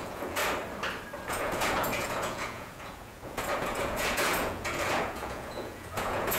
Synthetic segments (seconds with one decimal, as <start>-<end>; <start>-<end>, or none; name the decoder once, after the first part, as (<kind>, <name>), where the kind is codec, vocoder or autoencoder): 0.0-0.4 (vocoder, Vocos); 1.3-6.4